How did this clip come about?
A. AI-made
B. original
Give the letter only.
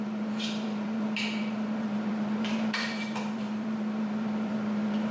A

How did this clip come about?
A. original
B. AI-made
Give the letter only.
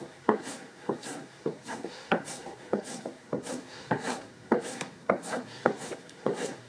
B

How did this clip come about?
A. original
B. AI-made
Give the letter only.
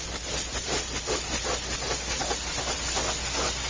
A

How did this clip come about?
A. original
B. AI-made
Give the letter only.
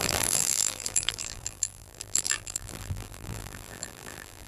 B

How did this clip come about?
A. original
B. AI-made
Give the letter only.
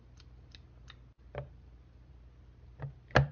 A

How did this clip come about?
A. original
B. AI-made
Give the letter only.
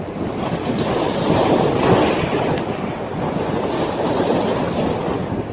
A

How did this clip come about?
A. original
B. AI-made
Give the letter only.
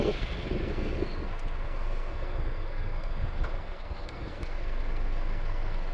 B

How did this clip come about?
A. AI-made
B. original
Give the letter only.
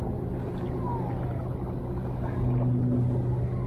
B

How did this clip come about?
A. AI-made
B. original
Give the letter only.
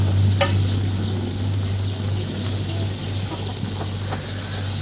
B